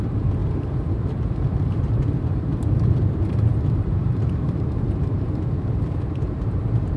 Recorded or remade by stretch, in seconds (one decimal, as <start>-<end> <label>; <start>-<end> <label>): 0.0-7.0 remade